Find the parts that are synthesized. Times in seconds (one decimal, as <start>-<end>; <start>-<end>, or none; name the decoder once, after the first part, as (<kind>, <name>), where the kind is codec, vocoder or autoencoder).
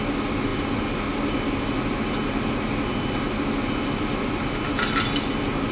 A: none